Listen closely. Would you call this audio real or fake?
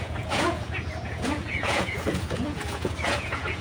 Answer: fake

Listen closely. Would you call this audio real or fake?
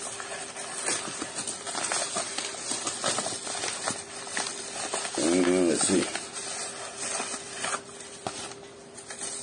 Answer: real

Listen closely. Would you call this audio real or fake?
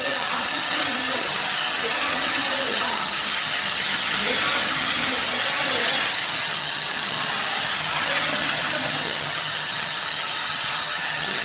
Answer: fake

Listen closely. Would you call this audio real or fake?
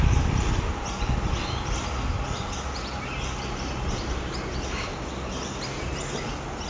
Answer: real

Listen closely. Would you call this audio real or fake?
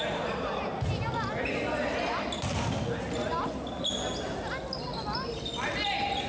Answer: real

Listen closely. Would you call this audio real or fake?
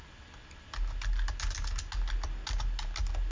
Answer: real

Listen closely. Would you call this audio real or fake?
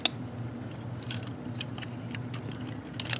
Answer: real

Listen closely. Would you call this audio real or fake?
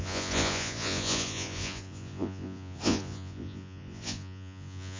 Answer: fake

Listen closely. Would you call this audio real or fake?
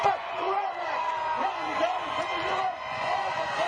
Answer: fake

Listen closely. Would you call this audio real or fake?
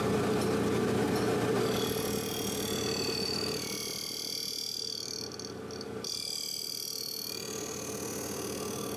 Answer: real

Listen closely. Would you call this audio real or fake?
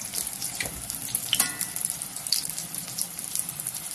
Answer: fake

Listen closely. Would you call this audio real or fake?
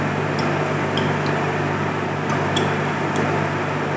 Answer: fake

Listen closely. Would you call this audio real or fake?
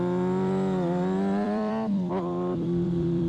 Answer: fake